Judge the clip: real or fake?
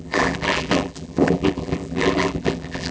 fake